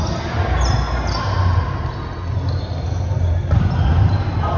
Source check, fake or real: real